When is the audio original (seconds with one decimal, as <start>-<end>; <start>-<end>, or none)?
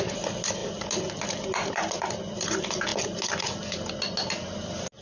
0.0-5.0